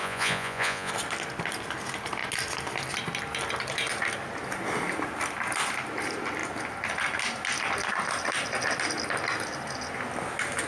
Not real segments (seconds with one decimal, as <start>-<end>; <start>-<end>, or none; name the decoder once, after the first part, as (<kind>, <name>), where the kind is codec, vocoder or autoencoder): 0.0-0.9 (vocoder, Vocos)